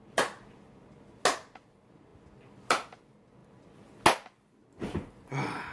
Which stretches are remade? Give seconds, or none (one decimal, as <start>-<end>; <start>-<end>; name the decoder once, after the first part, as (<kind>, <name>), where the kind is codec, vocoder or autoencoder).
none